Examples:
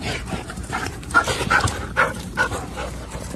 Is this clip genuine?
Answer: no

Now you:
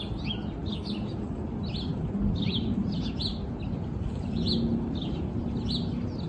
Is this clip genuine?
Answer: yes